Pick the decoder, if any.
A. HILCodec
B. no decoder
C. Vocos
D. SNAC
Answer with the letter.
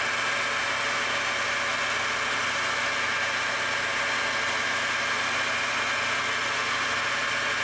B